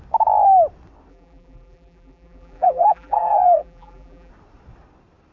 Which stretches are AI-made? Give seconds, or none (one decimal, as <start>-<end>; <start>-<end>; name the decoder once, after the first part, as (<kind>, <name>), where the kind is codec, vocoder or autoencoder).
1.1-4.3 (vocoder, BigVGAN v2)